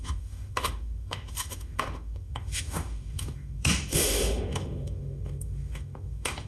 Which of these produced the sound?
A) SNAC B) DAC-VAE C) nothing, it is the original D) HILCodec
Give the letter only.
B